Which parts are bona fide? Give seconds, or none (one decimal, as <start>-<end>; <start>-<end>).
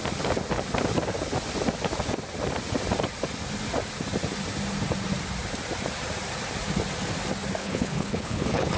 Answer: 0.0-7.6